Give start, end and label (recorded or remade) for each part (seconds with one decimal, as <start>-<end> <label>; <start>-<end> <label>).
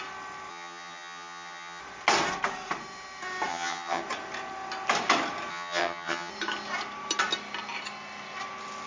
0.0-0.5 recorded; 0.5-1.8 remade; 1.8-3.5 recorded; 3.5-4.0 remade; 4.0-5.5 recorded; 5.5-6.3 remade; 6.3-8.9 recorded